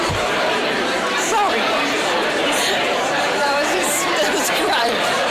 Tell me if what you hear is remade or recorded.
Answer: remade